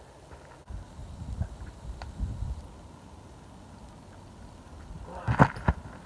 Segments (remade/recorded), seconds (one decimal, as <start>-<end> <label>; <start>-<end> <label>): 0.0-6.1 recorded